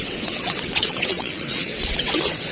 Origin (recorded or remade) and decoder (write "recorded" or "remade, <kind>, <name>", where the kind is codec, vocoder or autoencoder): remade, vocoder, WaveNeXt